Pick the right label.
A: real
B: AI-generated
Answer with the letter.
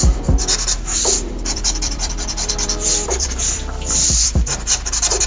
B